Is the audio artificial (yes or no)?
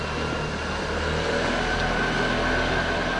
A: no